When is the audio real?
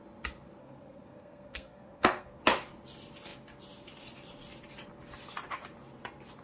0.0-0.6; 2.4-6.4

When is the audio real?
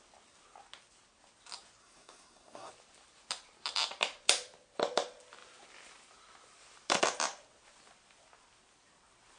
0.0-1.8; 2.7-9.4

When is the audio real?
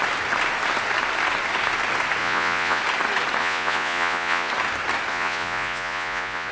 0.0-2.2; 2.8-3.4; 4.5-5.1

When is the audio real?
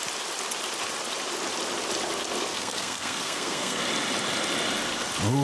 0.0-2.5; 3.8-5.4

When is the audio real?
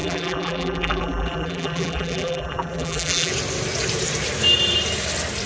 3.3-5.5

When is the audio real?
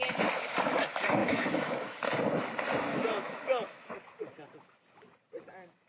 0.0-1.2; 2.0-2.9; 3.9-5.9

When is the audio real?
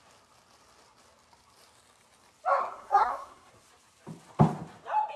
0.0-2.6; 3.5-5.2